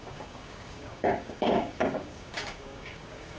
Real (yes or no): no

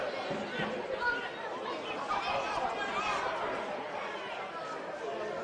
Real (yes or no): yes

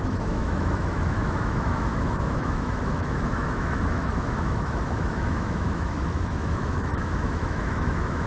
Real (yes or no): no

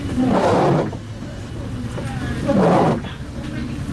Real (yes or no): yes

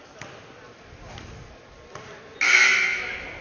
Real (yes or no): yes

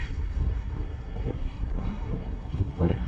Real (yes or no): no